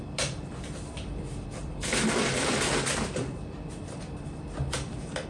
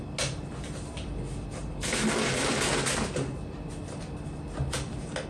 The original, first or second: second